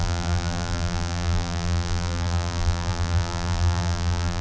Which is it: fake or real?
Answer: fake